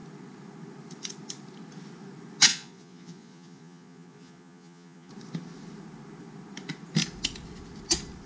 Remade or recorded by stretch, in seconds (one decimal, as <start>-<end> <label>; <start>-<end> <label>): 0.0-2.5 recorded; 2.5-5.1 remade; 5.1-8.3 recorded